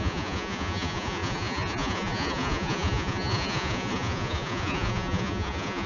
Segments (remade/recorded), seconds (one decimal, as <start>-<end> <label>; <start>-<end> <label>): 0.0-5.9 remade